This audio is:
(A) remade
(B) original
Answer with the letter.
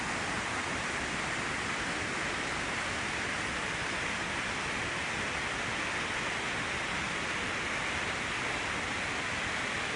B